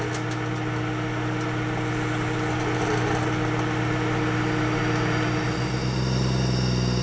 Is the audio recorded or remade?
recorded